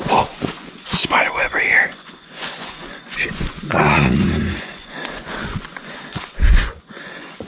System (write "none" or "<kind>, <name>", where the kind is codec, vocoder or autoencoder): vocoder, Vocos